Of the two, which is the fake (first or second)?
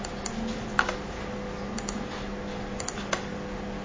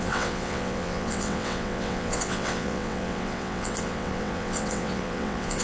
second